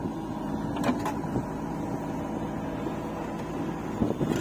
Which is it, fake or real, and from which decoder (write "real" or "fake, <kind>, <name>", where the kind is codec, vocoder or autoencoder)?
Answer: real